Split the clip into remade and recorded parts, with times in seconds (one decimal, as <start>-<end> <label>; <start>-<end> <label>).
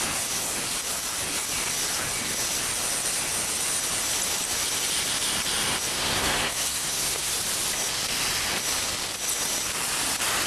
0.0-5.9 recorded; 5.9-7.3 remade; 7.3-10.5 recorded